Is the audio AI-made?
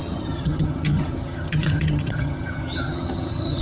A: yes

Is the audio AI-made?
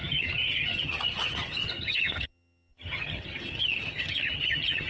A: yes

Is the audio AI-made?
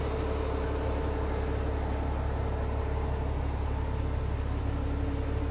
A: no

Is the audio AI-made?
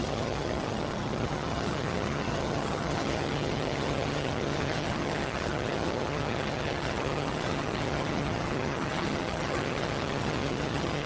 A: yes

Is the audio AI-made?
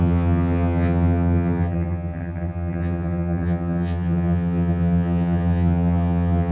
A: yes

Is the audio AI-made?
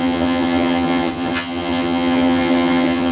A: yes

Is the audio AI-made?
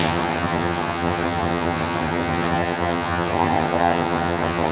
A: yes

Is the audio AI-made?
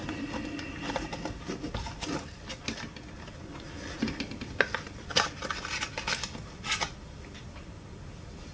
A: no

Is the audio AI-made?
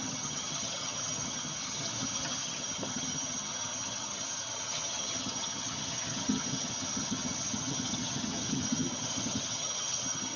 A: yes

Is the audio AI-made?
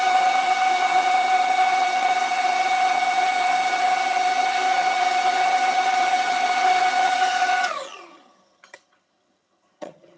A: yes